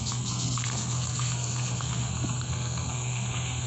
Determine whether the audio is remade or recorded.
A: remade